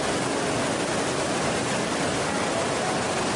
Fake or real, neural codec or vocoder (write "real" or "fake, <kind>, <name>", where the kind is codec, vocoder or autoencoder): real